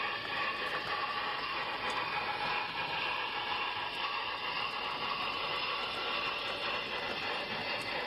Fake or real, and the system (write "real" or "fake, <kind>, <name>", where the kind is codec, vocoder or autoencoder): real